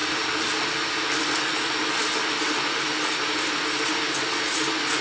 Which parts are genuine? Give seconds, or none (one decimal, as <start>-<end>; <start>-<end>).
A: 0.6-5.0